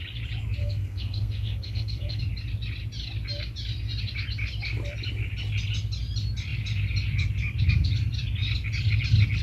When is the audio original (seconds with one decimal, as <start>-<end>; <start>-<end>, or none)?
0.0-0.6; 2.2-9.4